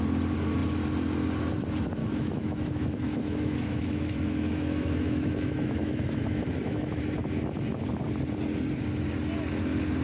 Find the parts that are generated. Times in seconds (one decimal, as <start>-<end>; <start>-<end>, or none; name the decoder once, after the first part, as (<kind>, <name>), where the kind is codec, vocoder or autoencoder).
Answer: 2.0-7.0 (autoencoder, DAC-VAE)